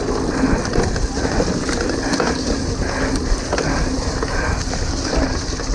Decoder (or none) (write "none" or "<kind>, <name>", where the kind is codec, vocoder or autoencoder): none